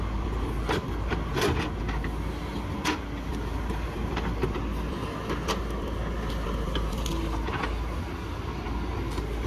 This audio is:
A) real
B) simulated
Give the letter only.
A